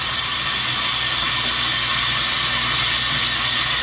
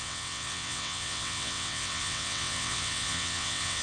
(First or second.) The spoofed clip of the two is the second